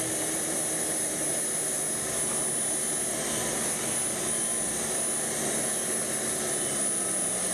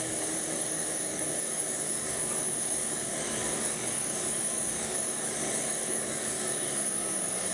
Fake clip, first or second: second